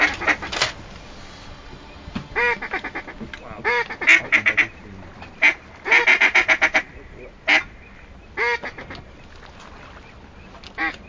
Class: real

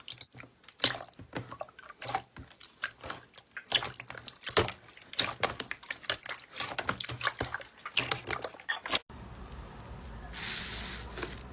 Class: real